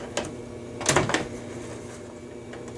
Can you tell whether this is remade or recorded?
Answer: recorded